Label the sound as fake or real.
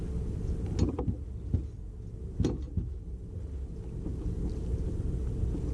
real